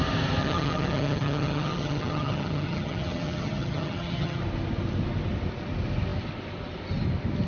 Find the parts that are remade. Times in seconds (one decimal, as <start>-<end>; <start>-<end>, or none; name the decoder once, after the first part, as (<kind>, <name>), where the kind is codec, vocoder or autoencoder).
0.4-4.4 (vocoder, HiFi-GAN)